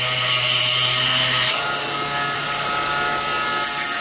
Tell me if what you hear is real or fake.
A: real